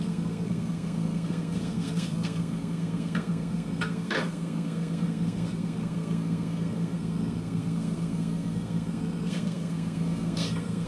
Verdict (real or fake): fake